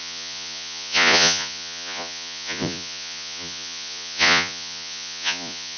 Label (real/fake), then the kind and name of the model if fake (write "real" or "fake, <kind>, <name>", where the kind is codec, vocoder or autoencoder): fake, vocoder, Vocos